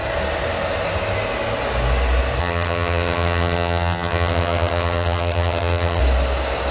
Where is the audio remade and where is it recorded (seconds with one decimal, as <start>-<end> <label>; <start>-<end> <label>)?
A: 0.0-2.4 recorded; 2.4-6.0 remade; 6.0-6.7 recorded